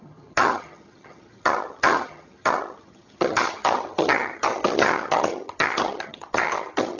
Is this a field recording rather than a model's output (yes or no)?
no